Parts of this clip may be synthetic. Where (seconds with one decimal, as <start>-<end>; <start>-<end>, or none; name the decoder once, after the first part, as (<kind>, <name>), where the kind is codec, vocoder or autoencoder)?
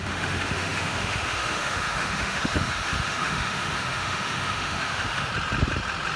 0.0-5.3 (autoencoder, DAC-VAE)